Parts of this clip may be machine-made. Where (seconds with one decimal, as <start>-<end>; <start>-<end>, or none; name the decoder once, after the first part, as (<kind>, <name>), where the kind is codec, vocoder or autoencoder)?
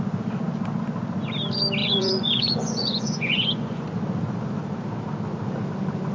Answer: 1.8-3.9 (vocoder, Vocos)